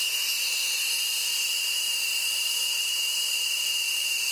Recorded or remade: recorded